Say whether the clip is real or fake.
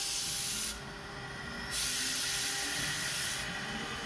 real